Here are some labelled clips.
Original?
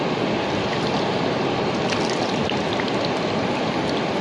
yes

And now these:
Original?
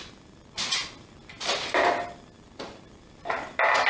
yes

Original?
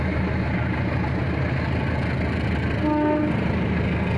yes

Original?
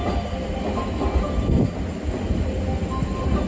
yes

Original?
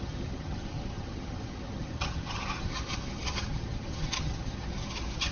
no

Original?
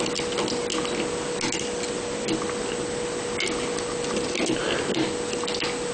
yes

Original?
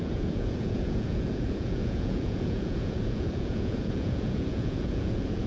no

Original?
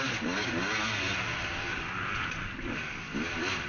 yes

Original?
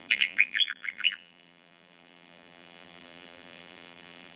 no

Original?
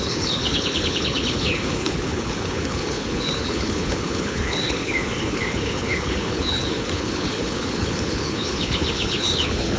no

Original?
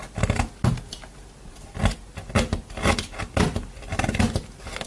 yes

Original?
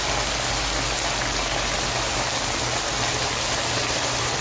yes